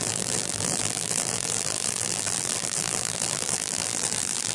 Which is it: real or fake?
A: fake